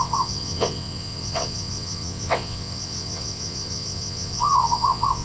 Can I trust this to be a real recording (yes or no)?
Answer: no